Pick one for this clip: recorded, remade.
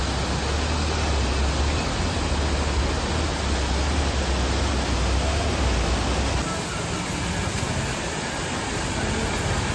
recorded